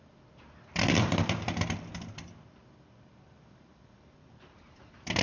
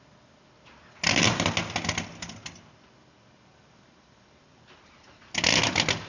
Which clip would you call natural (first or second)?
second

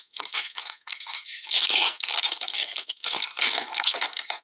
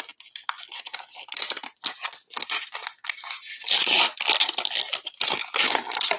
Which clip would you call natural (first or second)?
second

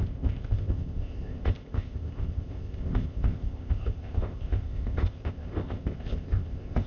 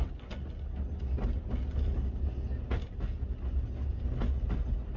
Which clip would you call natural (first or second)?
second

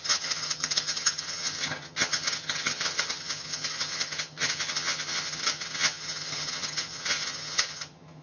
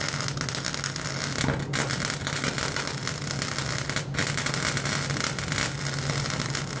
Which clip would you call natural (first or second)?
second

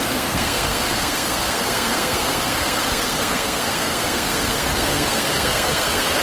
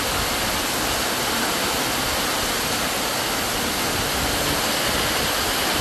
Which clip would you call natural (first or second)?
second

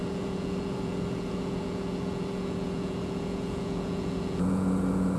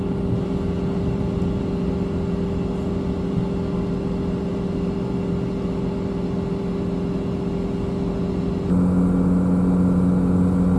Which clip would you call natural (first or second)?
second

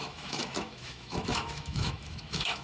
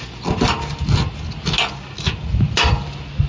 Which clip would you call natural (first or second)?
second